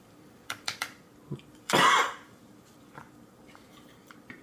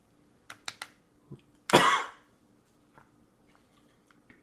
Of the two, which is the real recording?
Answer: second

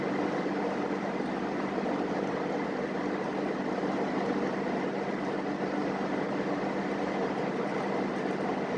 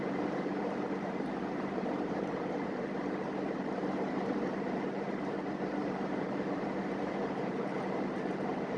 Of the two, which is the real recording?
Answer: first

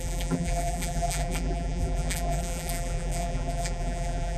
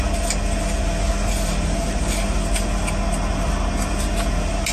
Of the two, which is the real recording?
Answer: second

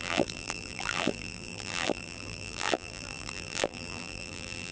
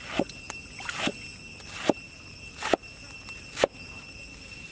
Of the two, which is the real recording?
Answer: second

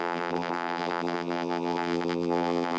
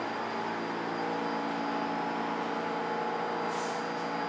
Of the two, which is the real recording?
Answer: second